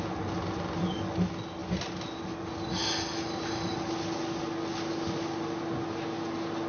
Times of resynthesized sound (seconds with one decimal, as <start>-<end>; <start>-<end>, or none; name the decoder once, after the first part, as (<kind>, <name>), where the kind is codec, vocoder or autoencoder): none